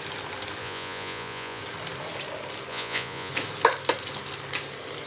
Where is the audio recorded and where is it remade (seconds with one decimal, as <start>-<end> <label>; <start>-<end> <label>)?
0.0-0.6 recorded; 0.6-1.6 remade; 1.6-2.7 recorded; 2.7-3.3 remade; 3.3-5.1 recorded